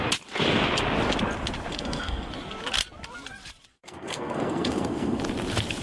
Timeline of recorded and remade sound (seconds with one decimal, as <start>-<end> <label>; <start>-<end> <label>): 0.0-1.7 recorded; 1.7-2.3 remade; 2.3-3.7 recorded; 3.7-5.2 remade; 5.2-5.8 recorded